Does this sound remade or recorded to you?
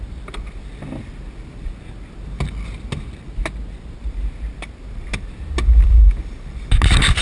recorded